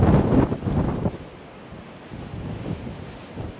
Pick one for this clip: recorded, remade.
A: recorded